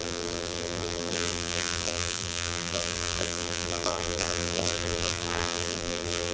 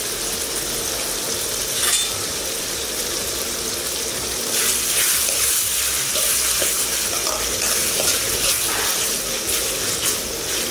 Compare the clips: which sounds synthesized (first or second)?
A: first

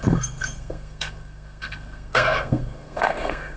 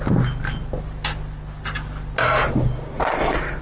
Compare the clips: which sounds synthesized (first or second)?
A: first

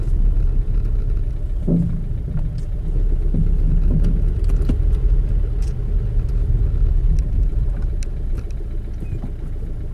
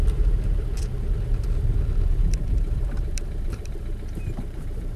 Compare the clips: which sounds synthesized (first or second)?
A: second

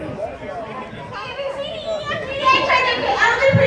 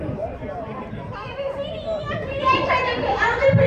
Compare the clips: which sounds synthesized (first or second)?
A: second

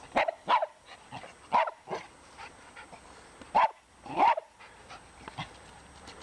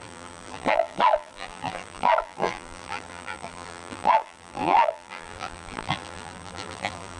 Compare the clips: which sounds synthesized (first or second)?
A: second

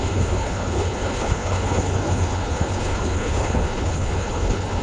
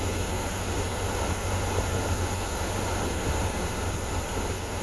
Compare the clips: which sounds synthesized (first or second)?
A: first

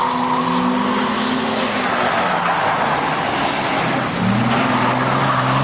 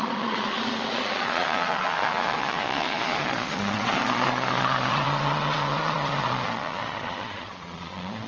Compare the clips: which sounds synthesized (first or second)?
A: second